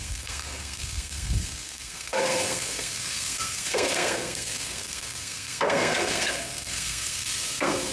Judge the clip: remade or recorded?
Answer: remade